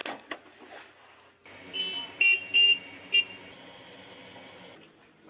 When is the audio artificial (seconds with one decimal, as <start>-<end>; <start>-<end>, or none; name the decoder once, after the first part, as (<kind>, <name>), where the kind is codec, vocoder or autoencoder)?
none